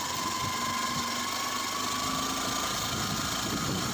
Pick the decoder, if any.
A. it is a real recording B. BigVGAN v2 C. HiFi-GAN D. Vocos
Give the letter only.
A